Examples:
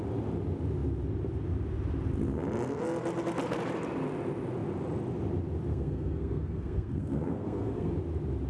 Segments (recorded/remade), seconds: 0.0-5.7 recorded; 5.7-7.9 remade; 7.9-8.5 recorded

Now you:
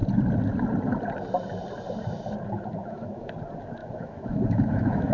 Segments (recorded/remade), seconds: 0.0-2.8 recorded; 2.8-3.3 remade; 3.3-3.8 recorded; 3.8-5.1 remade